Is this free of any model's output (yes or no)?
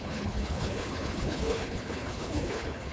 no